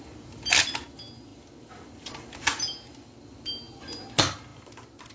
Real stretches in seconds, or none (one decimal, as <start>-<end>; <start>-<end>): 0.0-5.1